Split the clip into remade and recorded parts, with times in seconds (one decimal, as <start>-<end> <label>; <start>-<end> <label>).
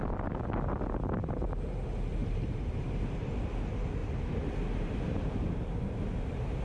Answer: 0.0-2.2 recorded; 2.2-3.3 remade; 3.3-4.0 recorded; 4.0-6.0 remade; 6.0-6.6 recorded